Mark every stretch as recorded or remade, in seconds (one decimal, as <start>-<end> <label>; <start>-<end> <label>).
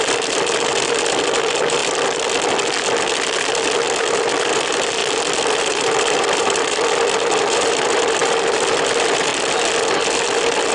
0.0-1.8 remade; 1.8-4.5 recorded; 4.5-5.0 remade; 5.0-5.6 recorded; 5.6-9.3 remade; 9.3-10.0 recorded; 10.0-10.7 remade